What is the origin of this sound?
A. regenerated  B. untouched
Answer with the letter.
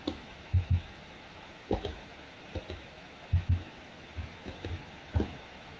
A